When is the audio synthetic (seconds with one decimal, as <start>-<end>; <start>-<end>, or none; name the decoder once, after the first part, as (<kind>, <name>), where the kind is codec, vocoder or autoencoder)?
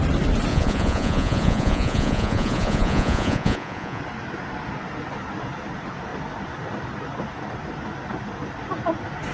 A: 0.5-4.0 (vocoder, Vocos)